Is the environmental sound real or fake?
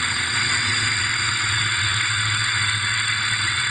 fake